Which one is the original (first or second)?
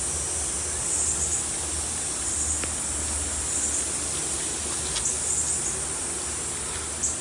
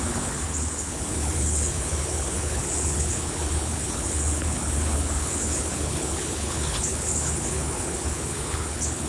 first